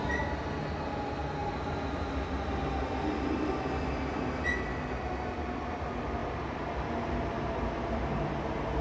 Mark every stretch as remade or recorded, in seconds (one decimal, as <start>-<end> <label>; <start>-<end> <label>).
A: 0.0-6.2 recorded; 6.2-8.8 remade